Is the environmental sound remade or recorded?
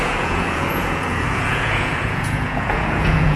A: remade